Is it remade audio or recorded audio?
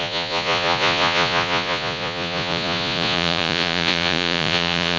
remade